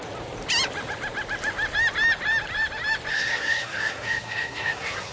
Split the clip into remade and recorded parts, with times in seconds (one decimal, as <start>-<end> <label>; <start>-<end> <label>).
0.0-3.1 recorded; 3.1-5.1 remade